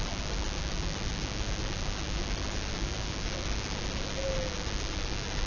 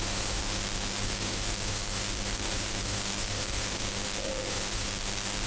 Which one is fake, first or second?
second